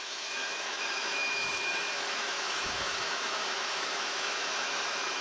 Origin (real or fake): fake